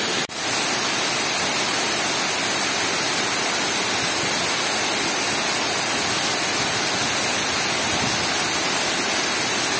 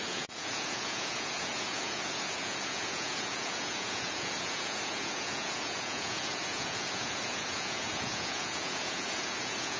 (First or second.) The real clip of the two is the first